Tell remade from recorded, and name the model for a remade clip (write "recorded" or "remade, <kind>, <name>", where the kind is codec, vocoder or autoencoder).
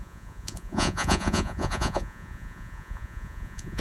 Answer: remade, vocoder, Vocos